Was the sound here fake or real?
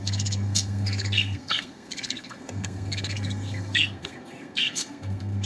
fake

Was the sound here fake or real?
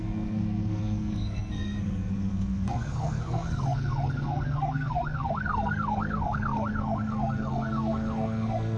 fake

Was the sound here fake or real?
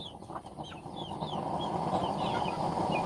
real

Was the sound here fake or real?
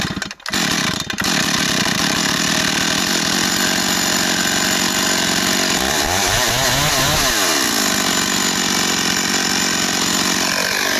real